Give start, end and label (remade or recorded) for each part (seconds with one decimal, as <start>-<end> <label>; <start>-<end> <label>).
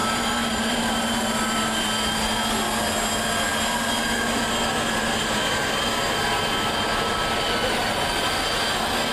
0.0-1.9 remade; 1.9-9.1 recorded